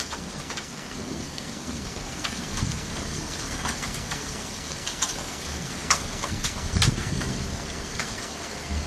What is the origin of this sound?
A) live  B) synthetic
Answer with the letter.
B